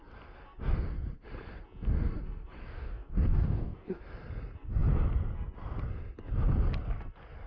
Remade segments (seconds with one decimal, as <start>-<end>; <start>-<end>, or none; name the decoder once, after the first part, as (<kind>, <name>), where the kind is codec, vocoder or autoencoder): 2.6-4.0 (codec, DAC)